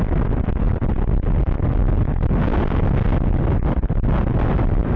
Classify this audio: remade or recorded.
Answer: recorded